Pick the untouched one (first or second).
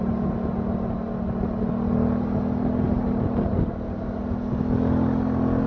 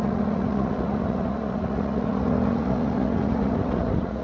first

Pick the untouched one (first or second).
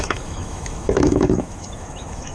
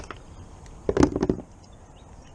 second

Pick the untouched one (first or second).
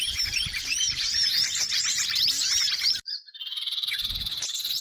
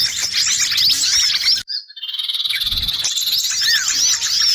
second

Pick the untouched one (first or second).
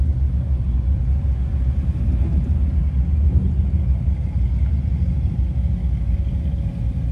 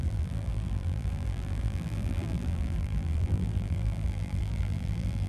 first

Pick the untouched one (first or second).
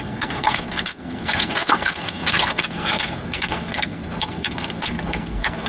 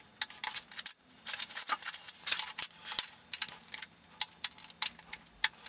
second